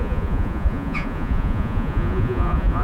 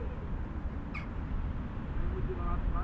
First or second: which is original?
second